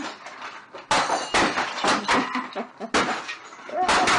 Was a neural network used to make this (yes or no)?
no